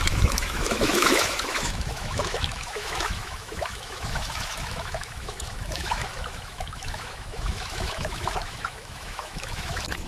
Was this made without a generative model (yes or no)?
no